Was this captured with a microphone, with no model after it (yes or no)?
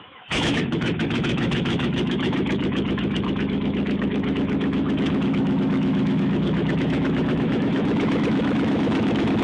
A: no